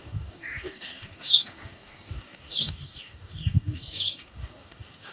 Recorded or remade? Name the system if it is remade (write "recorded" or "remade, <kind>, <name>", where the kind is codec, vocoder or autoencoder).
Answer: remade, codec, DAC